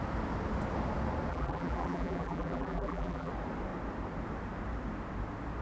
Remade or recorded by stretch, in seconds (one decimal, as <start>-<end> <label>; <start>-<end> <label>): 0.0-1.3 recorded; 1.3-3.3 remade; 3.3-5.6 recorded